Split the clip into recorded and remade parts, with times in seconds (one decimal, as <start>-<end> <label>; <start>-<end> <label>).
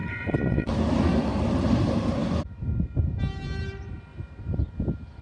0.0-0.7 remade; 0.7-5.2 recorded